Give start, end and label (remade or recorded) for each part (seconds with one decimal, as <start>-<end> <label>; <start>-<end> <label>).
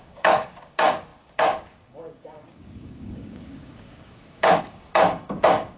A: 0.0-5.8 remade